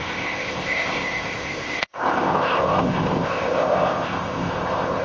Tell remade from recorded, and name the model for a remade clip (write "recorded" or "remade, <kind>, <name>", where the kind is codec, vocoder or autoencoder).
remade, codec, ZipCodec